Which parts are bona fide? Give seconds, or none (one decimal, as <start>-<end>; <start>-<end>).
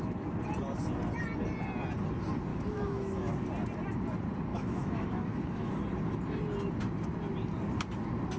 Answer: 0.0-2.5; 3.3-4.5; 5.7-8.4